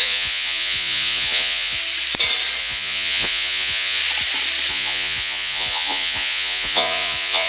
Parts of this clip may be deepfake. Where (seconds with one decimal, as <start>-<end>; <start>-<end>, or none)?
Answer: 0.0-1.8; 2.6-4.0; 4.7-7.5